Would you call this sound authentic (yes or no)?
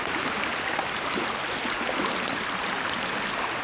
yes